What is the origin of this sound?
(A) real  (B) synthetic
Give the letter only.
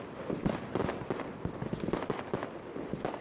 A